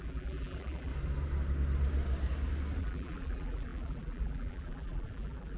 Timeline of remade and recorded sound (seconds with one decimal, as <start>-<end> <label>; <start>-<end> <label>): 0.0-0.9 remade; 0.9-2.8 recorded; 2.8-5.6 remade